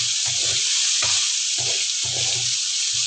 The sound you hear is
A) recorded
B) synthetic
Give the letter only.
A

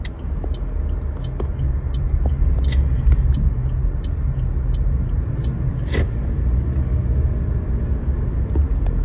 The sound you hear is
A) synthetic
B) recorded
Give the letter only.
B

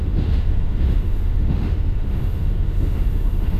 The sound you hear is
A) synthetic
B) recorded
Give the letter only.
A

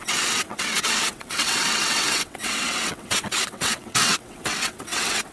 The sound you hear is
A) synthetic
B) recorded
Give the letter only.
A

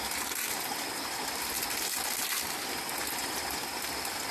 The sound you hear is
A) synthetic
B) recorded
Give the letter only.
B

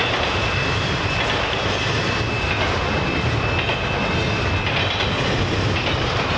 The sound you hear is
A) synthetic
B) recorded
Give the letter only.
B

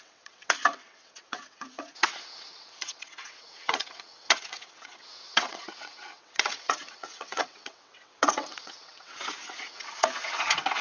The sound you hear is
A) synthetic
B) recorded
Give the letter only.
A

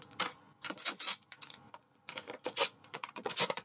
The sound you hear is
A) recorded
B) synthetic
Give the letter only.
B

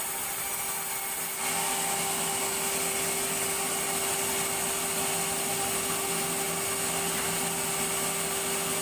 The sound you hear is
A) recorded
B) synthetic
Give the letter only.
A